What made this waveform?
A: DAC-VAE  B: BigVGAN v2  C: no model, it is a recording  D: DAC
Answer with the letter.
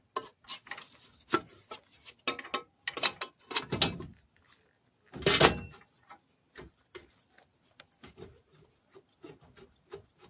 C